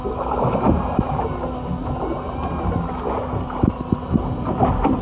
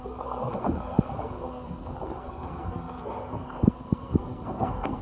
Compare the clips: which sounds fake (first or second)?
second